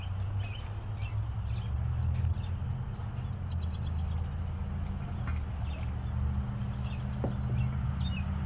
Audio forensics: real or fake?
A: real